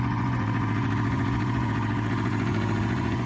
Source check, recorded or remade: remade